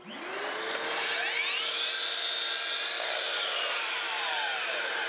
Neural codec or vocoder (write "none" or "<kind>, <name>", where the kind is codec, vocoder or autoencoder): none